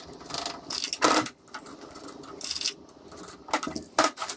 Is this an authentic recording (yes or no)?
yes